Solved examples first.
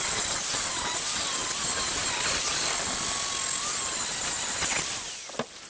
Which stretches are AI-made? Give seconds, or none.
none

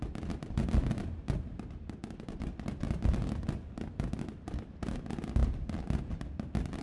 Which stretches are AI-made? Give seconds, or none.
none

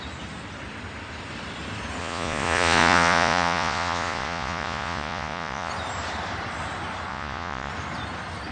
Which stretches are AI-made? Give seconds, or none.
2.0-5.7 (vocoder, Vocos); 7.1-7.7

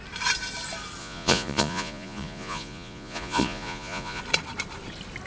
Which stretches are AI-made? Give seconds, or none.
1.0-4.2 (vocoder, Vocos)

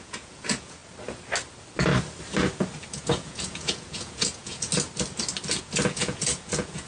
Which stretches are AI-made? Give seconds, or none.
0.0-0.8 (vocoder, Vocos); 2.9-4.7; 5.6-6.9

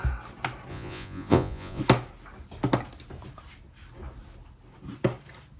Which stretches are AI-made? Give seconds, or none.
0.7-1.8 (vocoder, Vocos)

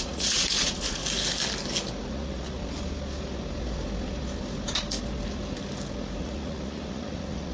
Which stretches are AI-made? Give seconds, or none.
0.0-1.0 (vocoder, Vocos); 2.1-2.6; 6.2-7.5